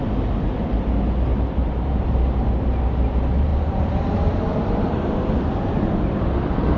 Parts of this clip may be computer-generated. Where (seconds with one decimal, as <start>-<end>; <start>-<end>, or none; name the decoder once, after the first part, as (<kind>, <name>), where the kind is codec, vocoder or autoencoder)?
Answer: 1.3-2.5 (vocoder, BigVGAN v2); 3.5-5.5